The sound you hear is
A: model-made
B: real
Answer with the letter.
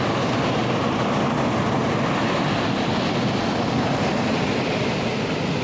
B